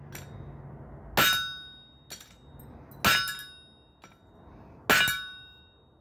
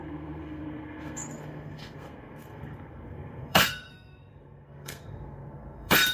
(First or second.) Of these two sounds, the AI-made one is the second